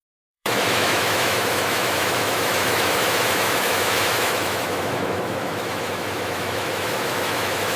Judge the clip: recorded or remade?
remade